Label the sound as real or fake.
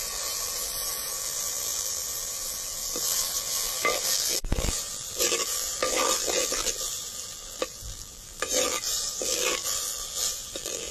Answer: fake